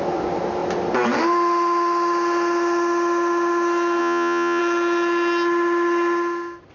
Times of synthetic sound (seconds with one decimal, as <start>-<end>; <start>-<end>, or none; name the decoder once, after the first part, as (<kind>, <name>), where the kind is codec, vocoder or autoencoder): 4.0-4.6 (vocoder, Vocos)